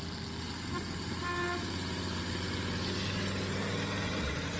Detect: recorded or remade recorded